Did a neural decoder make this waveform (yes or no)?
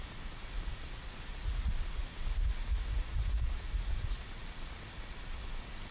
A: yes